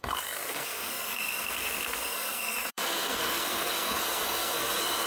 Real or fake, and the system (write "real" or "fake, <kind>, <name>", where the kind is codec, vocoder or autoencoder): fake, codec, SNAC